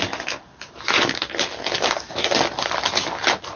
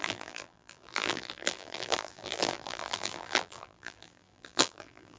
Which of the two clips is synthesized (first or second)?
second